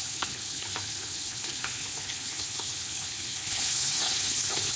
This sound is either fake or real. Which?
fake